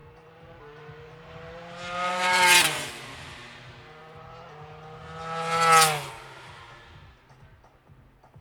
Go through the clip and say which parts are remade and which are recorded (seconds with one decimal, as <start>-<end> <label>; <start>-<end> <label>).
0.0-2.9 remade; 2.9-8.4 recorded